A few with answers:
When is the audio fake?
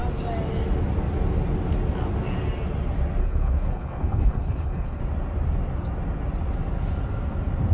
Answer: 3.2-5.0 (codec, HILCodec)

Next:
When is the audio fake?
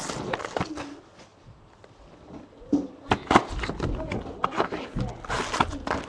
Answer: none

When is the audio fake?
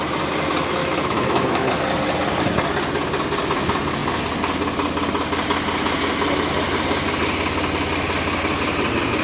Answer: 0.8-1.7 (autoencoder, DAC-VAE)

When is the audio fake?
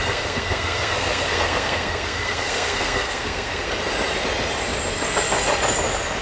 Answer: 0.0-3.7 (codec, SNAC)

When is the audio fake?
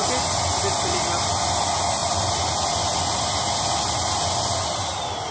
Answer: none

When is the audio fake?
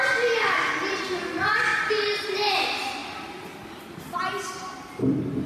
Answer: 1.7-2.2 (vocoder, BigVGAN v2)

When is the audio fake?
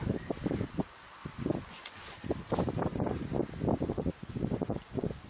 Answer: 1.6-2.0 (vocoder, Vocos); 2.9-3.3; 3.9-5.3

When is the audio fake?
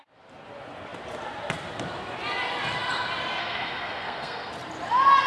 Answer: 3.4-4.5 (codec, SNAC)